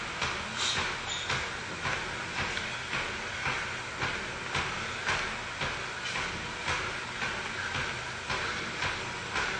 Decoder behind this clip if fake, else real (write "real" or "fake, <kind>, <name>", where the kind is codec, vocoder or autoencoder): real